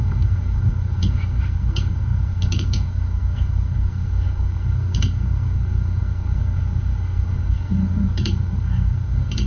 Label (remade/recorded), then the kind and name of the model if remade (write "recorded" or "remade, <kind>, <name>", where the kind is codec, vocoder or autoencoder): remade, codec, SNAC